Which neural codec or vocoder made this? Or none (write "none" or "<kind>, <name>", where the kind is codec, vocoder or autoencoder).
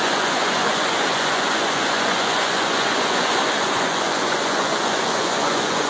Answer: vocoder, Vocos